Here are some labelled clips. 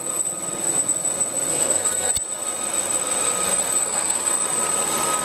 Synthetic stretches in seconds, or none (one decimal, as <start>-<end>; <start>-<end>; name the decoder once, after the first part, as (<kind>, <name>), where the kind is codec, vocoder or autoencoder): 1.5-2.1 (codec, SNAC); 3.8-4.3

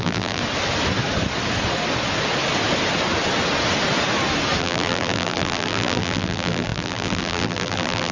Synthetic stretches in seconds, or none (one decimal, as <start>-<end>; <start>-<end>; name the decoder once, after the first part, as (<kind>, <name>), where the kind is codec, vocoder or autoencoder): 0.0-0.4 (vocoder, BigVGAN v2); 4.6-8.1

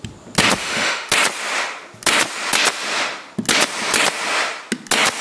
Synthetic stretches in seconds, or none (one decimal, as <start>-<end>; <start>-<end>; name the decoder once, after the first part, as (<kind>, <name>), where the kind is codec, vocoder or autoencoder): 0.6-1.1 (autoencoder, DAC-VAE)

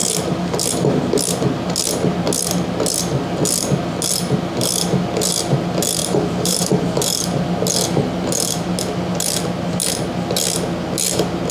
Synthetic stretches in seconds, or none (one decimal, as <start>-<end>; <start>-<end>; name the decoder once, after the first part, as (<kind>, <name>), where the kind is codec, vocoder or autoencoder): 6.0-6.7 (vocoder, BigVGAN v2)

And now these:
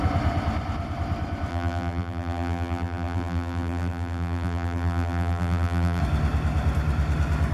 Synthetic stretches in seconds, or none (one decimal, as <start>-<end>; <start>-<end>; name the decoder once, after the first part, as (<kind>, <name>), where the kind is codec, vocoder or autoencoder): 1.5-6.0 (vocoder, BigVGAN v2)

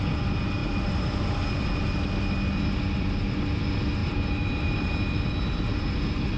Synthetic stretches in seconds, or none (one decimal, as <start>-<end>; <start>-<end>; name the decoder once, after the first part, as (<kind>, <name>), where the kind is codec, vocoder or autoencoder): 0.6-1.5 (vocoder, BigVGAN v2); 4.0-5.2

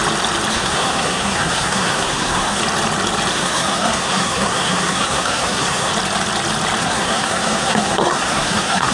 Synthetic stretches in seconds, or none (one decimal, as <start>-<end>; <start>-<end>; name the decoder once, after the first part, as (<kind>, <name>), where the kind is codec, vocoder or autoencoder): 0.5-2.6 (codec, SNAC); 3.3-5.9; 6.8-8.9

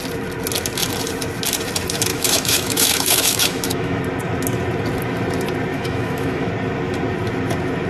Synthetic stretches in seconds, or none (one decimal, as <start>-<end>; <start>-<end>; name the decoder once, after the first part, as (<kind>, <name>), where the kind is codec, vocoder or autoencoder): 2.1-4.0 (autoencoder, DAC-VAE); 5.7-6.5